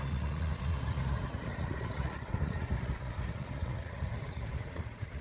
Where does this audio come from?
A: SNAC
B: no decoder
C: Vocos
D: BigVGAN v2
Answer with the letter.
C